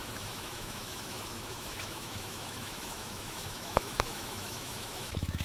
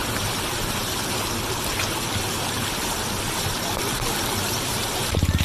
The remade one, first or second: first